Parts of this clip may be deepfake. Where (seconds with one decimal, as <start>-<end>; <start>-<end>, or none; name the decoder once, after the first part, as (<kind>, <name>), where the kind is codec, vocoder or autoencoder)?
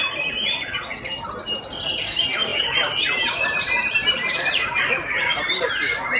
0.0-0.8 (vocoder, BigVGAN v2); 2.5-3.0; 4.0-4.9